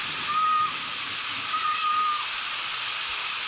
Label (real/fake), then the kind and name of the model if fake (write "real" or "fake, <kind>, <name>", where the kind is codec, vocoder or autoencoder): real